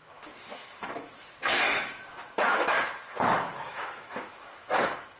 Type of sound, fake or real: fake